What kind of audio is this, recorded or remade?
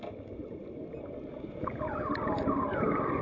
recorded